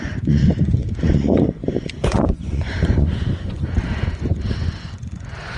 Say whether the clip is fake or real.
fake